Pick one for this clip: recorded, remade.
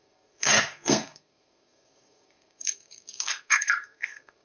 remade